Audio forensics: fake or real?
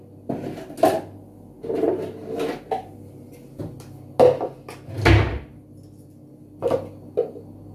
real